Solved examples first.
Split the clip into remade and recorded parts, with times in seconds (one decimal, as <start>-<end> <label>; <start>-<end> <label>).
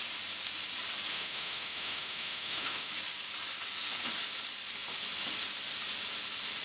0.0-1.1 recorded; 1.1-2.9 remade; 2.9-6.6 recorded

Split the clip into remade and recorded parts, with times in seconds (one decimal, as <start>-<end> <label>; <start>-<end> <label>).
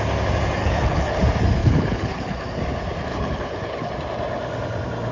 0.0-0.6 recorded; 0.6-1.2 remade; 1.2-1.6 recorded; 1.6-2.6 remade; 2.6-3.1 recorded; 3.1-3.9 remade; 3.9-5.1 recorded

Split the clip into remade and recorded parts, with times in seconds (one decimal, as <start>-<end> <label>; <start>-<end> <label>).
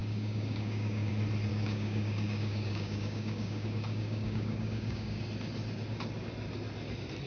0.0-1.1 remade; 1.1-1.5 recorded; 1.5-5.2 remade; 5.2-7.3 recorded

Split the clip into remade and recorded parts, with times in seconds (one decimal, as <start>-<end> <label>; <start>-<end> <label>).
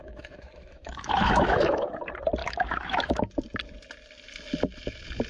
0.0-1.9 remade; 1.9-2.4 recorded; 2.4-3.4 remade; 3.4-5.3 recorded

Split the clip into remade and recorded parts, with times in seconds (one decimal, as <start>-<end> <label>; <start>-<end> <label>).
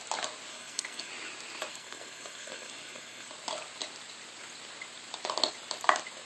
0.0-0.5 recorded; 0.5-1.1 remade; 1.1-1.7 recorded; 1.7-3.3 remade; 3.3-6.3 recorded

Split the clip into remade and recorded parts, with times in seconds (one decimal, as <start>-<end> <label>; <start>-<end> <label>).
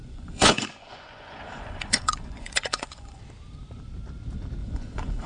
0.0-3.2 remade; 3.2-4.6 recorded; 4.6-5.3 remade